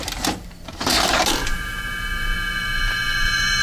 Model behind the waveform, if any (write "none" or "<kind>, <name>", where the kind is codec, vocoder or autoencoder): vocoder, BigVGAN v2